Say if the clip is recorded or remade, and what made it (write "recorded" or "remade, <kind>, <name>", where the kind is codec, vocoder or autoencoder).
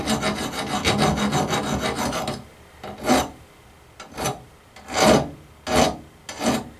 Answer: recorded